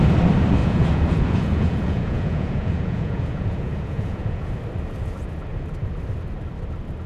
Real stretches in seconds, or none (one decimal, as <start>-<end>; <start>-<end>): 0.0-0.6; 4.5-7.1

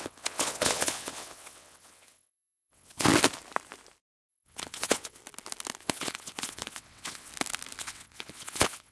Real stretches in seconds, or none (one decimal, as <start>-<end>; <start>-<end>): 3.1-4.3; 5.2-5.8; 7.3-7.8

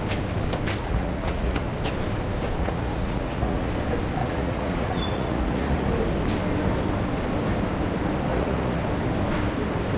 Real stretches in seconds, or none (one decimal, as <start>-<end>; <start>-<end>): 0.0-0.8; 1.7-2.6; 3.7-4.2; 5.9-8.3; 8.8-10.0